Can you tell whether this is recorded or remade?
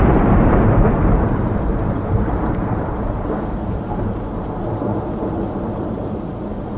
remade